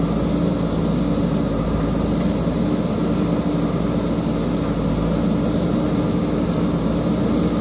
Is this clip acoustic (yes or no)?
yes